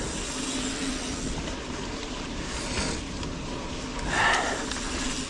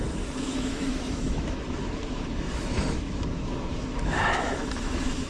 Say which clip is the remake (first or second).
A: second